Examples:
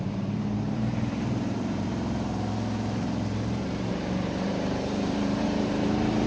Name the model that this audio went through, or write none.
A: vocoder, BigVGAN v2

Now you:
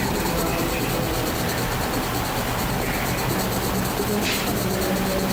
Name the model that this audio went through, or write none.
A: vocoder, BigVGAN v2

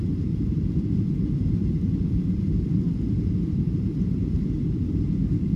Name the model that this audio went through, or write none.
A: vocoder, BigVGAN v2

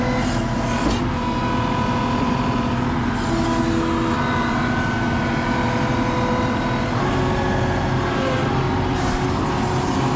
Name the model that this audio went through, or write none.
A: none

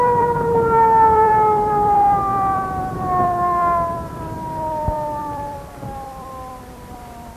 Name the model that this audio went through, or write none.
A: vocoder, BigVGAN v2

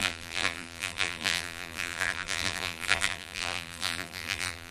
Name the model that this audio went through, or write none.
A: vocoder, BigVGAN v2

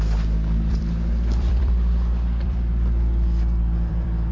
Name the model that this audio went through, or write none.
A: vocoder, BigVGAN v2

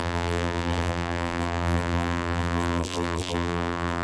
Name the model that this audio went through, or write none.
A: vocoder, BigVGAN v2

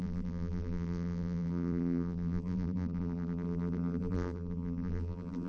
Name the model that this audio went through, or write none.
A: vocoder, BigVGAN v2